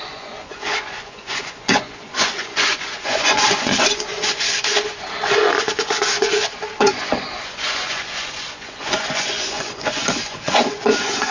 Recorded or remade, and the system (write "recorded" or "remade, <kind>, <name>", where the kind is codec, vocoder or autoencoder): remade, vocoder, Vocos